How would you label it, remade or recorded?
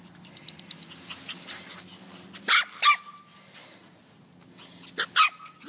recorded